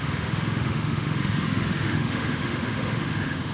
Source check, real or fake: fake